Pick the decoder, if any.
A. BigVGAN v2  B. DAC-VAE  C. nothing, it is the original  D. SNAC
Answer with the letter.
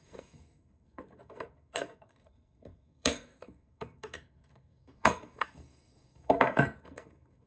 D